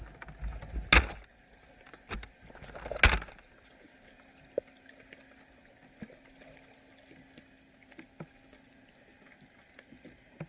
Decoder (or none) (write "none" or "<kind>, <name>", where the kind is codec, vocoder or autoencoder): none